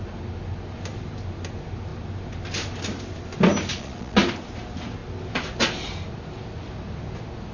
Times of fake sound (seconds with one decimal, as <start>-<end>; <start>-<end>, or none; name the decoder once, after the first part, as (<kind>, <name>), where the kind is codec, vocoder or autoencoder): 3.7-4.2 (vocoder, Vocos)